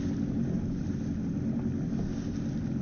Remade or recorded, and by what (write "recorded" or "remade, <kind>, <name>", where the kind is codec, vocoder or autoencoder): recorded